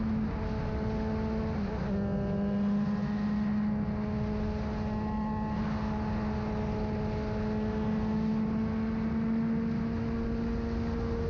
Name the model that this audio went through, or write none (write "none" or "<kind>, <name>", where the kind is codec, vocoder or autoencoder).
none